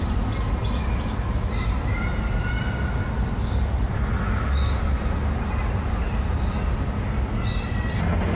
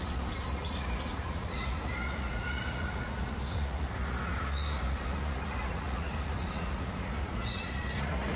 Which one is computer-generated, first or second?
second